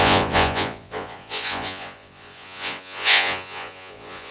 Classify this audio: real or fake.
fake